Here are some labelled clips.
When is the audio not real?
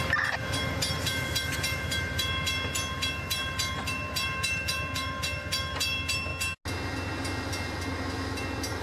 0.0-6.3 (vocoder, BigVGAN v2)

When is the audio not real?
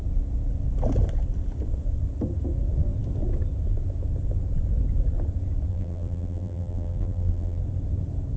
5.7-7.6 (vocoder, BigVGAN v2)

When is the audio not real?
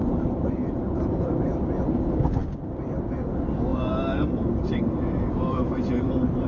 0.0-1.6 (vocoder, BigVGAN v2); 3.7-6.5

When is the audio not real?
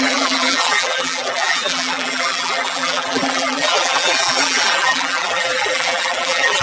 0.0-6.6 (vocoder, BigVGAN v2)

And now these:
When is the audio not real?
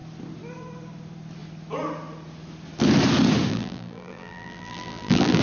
3.5-5.4 (vocoder, BigVGAN v2)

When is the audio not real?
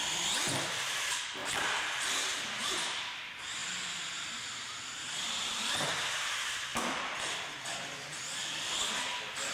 1.4-2.0 (vocoder, BigVGAN v2); 3.6-5.9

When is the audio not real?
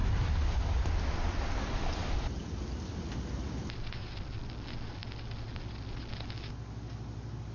0.0-4.5 (vocoder, BigVGAN v2); 5.0-5.9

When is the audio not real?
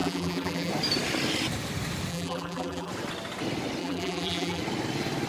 0.0-0.7 (vocoder, BigVGAN v2); 2.1-2.9; 3.8-4.6